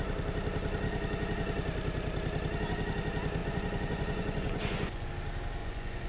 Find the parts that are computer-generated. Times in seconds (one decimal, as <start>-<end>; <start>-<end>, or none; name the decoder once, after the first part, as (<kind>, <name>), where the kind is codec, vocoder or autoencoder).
3.4-5.1 (vocoder, Vocos); 5.6-6.1